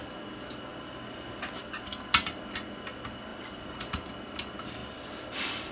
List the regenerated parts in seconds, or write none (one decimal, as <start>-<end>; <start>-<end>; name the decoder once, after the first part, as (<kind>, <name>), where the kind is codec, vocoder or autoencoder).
0.7-1.4 (vocoder, BigVGAN v2); 3.3-3.9; 4.8-5.7